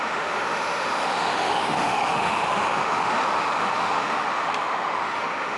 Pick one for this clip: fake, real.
fake